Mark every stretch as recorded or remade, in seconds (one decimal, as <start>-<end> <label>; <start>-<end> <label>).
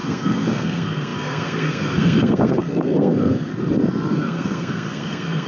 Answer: 0.0-3.5 remade; 3.5-4.1 recorded; 4.1-5.5 remade